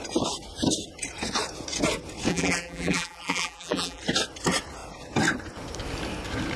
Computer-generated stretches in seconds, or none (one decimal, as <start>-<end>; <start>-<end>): 2.3-4.0

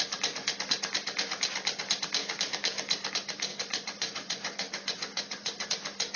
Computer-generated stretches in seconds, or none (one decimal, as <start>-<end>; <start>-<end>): 3.5-5.7

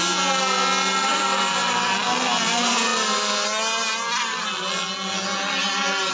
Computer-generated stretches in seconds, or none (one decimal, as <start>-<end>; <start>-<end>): none

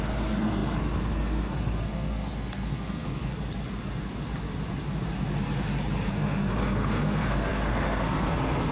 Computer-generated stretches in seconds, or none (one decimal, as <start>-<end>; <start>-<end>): 0.0-3.3; 6.1-8.7

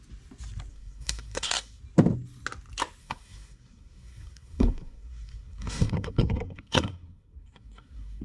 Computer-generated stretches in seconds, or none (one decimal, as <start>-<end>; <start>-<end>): 0.7-1.8; 3.0-8.2